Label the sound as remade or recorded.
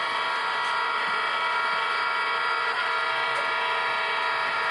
recorded